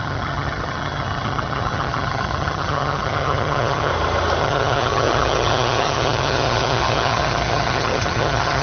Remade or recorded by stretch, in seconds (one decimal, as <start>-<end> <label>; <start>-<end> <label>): 0.0-3.9 remade; 3.9-4.4 recorded; 4.4-8.6 remade